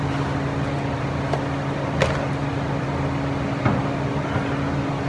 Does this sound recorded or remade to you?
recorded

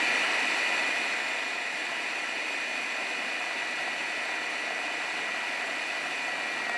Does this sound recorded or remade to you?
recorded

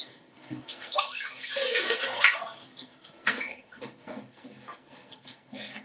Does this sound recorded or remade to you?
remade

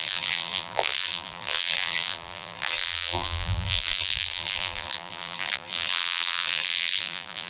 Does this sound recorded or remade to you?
remade